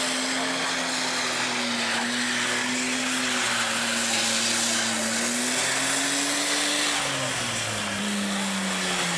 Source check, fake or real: real